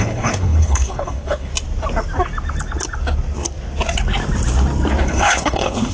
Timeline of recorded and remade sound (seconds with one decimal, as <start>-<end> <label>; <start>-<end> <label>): 0.0-1.5 remade; 1.5-5.0 recorded; 5.0-5.9 remade